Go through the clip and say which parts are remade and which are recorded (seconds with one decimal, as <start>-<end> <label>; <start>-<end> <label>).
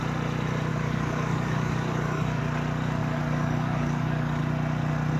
0.0-0.7 recorded; 0.7-2.4 remade; 2.4-3.0 recorded; 3.0-4.4 remade; 4.4-5.2 recorded